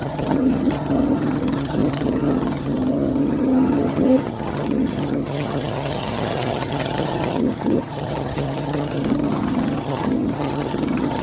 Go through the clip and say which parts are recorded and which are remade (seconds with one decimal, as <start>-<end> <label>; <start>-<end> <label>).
0.0-11.2 remade